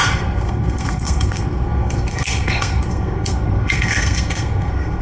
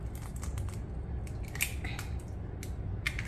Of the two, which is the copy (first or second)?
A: first